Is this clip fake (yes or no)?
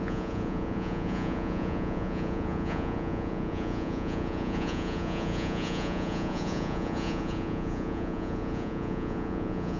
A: yes